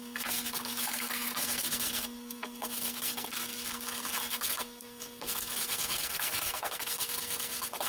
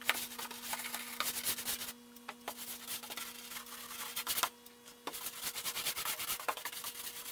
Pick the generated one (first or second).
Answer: first